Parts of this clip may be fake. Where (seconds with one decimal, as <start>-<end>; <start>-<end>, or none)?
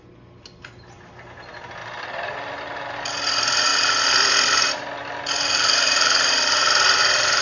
1.8-2.5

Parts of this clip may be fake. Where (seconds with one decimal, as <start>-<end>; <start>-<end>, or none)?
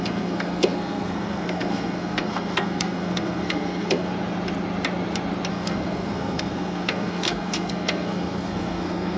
0.0-4.1; 5.5-9.2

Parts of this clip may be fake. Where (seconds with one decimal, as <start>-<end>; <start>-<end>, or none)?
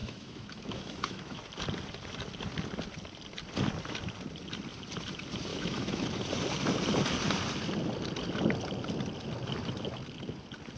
0.0-1.4; 5.5-6.1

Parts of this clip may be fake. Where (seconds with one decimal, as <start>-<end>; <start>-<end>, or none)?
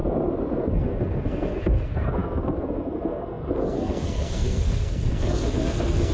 0.6-6.1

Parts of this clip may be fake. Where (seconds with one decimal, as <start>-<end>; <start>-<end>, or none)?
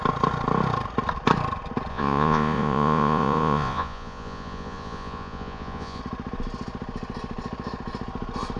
1.9-6.0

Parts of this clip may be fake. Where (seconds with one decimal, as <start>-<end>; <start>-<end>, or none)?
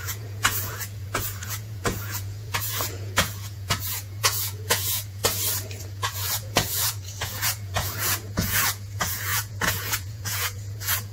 0.0-5.2; 5.8-11.1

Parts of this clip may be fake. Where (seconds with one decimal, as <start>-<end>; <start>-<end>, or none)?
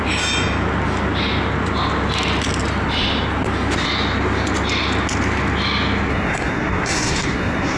6.1-7.8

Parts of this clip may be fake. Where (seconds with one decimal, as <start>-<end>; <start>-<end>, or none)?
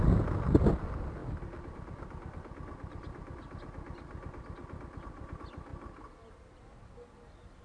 none